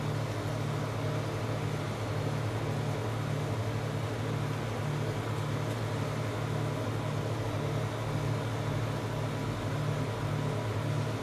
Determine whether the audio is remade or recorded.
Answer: recorded